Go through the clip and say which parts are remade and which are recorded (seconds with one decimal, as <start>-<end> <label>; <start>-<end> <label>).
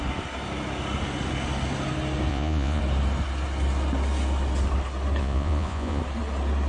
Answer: 0.0-2.3 recorded; 2.3-2.8 remade; 2.8-5.2 recorded; 5.2-6.0 remade; 6.0-6.7 recorded